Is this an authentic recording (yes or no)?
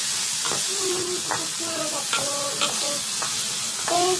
yes